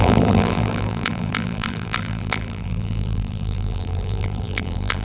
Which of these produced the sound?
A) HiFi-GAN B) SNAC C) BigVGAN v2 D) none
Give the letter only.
C